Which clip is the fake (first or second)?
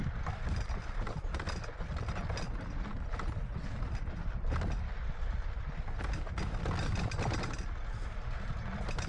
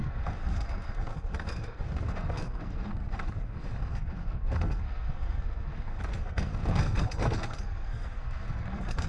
second